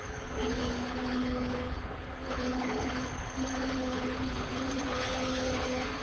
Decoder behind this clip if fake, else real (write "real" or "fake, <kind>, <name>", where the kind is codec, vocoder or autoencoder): fake, codec, HILCodec